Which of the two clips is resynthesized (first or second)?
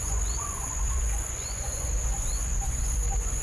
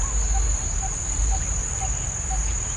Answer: first